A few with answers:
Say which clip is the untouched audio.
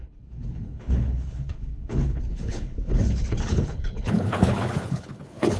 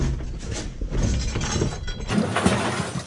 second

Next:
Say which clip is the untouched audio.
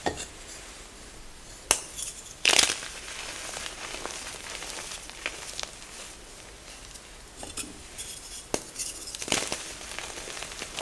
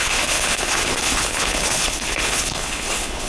first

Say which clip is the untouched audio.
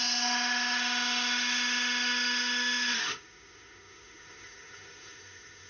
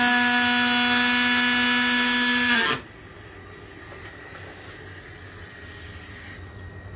second